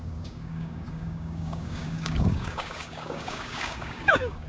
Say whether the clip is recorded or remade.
remade